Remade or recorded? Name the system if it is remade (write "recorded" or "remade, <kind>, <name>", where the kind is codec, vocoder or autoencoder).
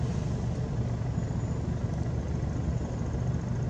recorded